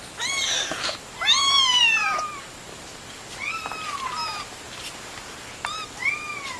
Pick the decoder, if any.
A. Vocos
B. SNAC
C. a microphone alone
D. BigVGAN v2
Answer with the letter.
C